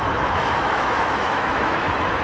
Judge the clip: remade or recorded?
remade